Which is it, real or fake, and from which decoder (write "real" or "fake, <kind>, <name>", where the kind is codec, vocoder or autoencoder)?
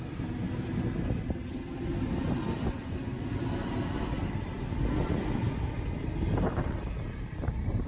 real